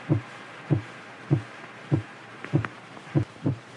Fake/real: fake